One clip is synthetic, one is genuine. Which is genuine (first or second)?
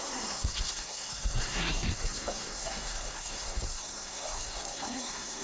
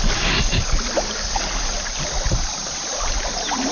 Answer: second